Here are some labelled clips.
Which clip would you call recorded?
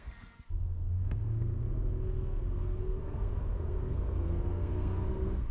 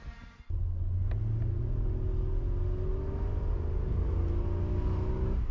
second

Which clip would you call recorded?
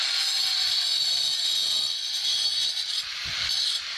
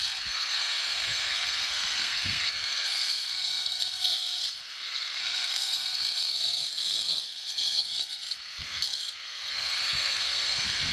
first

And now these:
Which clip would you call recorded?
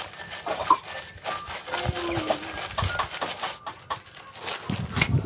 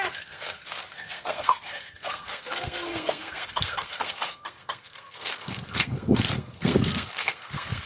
first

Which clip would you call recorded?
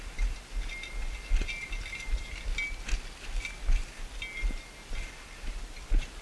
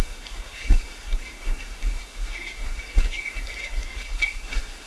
first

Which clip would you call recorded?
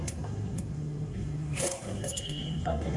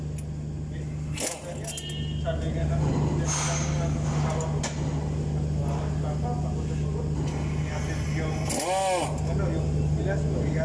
second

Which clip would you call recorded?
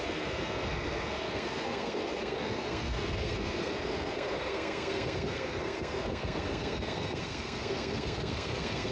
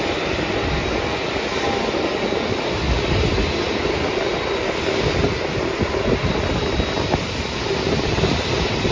second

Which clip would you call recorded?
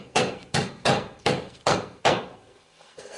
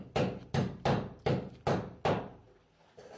second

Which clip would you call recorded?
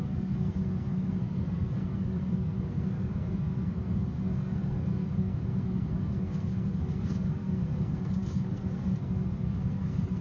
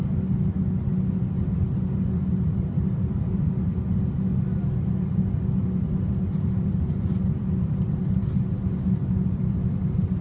second